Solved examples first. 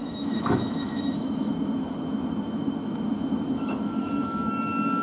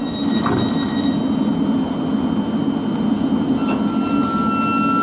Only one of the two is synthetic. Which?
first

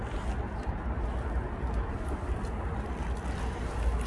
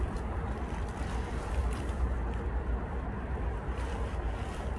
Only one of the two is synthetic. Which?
second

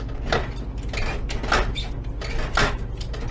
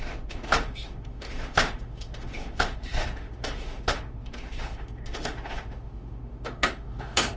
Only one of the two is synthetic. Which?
second